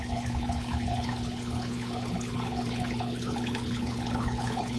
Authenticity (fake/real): fake